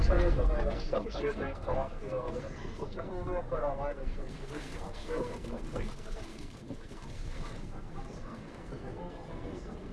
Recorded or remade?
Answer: remade